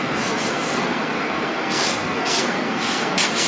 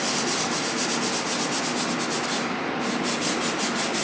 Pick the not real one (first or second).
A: first